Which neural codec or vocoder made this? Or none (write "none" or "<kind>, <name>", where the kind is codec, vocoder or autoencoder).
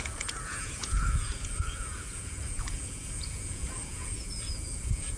vocoder, Vocos